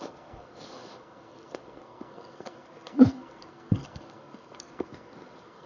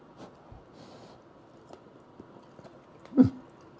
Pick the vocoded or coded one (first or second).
first